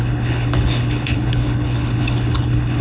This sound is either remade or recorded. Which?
remade